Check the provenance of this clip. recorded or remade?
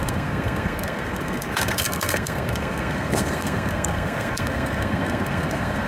remade